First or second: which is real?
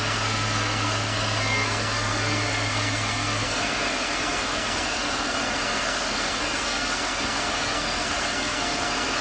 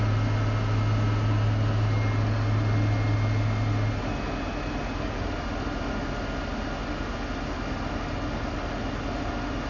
second